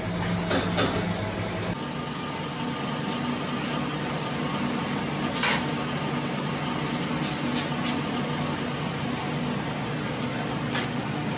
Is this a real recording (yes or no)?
yes